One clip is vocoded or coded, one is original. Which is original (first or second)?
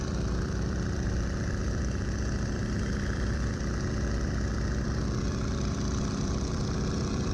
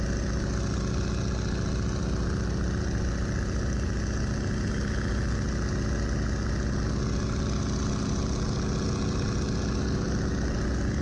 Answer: second